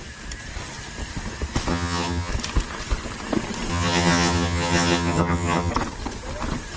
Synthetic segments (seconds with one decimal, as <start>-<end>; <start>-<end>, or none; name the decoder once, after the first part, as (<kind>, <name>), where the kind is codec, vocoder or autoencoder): 1.7-2.3 (vocoder, HiFi-GAN); 3.7-5.7